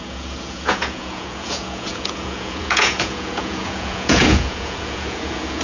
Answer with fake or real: fake